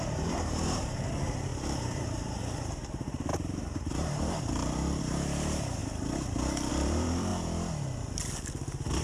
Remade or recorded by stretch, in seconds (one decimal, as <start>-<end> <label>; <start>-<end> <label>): 0.0-5.8 remade; 5.8-6.7 recorded; 6.7-7.3 remade; 7.3-9.0 recorded